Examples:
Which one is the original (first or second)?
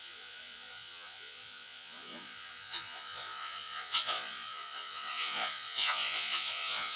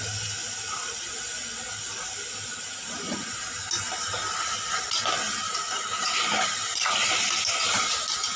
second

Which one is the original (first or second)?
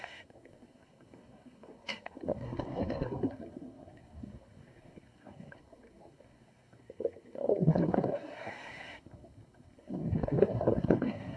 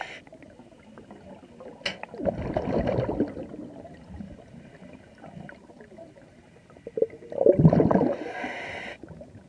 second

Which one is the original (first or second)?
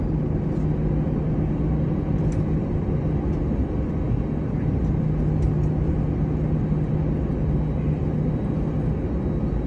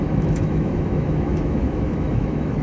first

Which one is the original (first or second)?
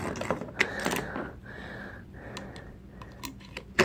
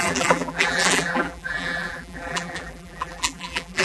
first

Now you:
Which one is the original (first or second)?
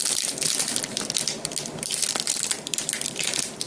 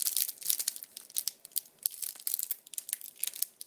second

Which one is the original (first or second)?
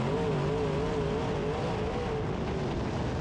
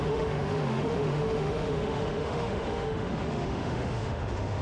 first